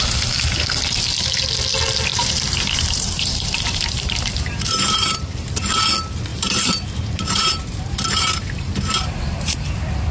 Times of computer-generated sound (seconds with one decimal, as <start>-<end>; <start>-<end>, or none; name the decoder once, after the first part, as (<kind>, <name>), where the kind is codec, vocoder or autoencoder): 2.1-5.6 (vocoder, BigVGAN v2); 6.3-10.1